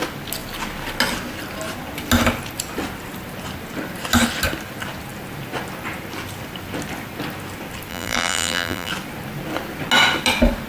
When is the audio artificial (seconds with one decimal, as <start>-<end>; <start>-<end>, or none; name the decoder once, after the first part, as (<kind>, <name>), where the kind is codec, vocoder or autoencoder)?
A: 7.9-8.9 (vocoder, BigVGAN v2)